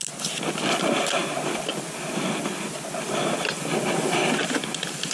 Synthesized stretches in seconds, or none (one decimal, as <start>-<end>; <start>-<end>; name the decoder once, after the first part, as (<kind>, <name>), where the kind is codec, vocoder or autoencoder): none